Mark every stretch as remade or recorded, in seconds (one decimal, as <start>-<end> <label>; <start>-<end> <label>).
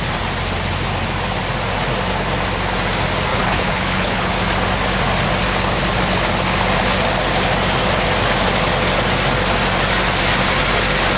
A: 0.0-3.3 recorded; 3.3-4.3 remade; 4.3-11.2 recorded